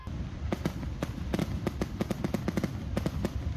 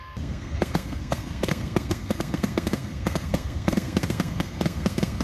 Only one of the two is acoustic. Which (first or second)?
first